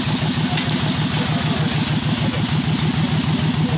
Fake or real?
real